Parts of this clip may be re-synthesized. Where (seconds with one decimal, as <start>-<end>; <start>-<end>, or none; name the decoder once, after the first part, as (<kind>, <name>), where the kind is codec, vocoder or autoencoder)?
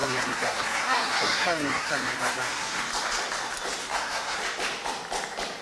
0.0-2.8 (codec, SNAC); 3.8-4.4